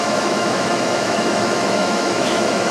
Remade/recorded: remade